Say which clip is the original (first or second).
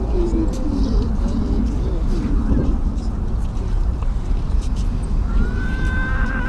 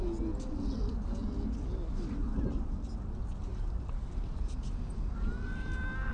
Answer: second